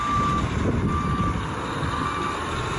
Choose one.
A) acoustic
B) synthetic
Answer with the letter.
A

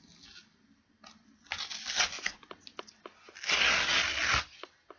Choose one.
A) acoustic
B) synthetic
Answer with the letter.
A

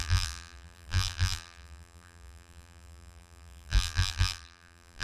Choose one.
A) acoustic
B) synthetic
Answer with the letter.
B